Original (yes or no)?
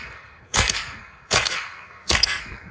no